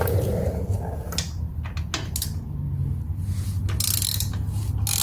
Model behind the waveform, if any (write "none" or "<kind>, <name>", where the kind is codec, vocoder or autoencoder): none